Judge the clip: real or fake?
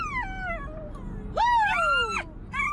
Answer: real